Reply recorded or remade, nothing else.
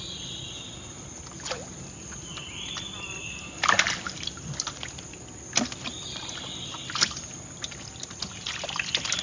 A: recorded